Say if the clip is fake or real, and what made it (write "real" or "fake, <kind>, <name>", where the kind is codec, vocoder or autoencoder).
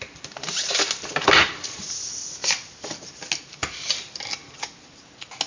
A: real